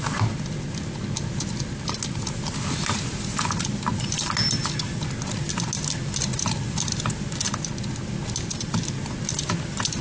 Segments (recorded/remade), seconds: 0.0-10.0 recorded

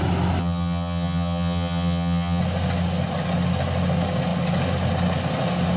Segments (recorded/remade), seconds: 0.0-0.4 recorded; 0.4-2.4 remade; 2.4-5.8 recorded

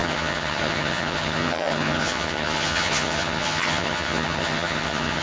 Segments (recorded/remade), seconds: 0.0-5.2 remade

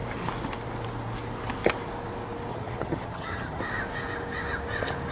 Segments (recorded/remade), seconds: 0.0-2.5 recorded; 2.5-3.6 remade; 3.6-5.1 recorded

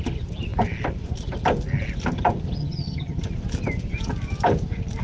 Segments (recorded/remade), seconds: 0.0-2.6 recorded; 2.6-3.2 remade; 3.2-5.0 recorded

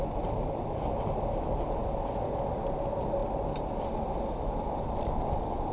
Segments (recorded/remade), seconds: 0.0-5.7 recorded

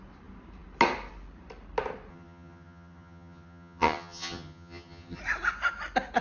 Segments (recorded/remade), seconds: 0.0-2.1 recorded; 2.1-5.2 remade; 5.2-6.2 recorded

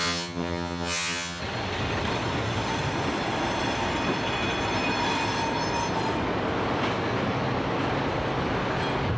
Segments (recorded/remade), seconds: 0.0-1.4 remade; 1.4-9.2 recorded